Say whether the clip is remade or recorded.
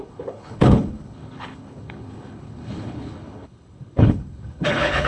remade